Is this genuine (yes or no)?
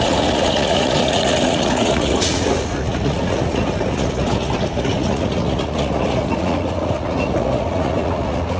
no